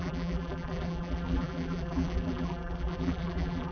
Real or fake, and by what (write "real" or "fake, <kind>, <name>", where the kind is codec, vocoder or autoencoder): fake, vocoder, BigVGAN v2